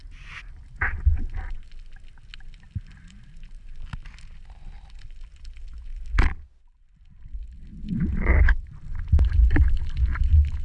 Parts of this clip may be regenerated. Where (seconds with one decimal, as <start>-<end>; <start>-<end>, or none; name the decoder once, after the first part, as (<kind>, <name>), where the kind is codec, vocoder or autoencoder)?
none